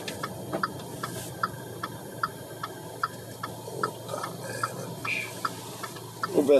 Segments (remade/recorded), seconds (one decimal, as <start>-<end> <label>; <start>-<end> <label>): 0.0-6.6 remade